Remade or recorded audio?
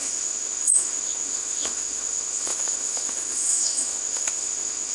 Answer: remade